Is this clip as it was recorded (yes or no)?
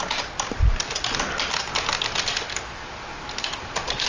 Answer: yes